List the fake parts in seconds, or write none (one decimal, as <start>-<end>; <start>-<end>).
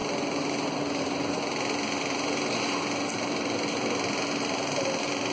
none